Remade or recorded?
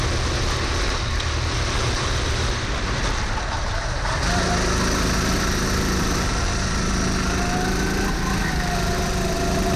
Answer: recorded